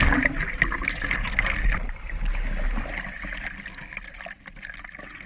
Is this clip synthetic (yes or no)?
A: no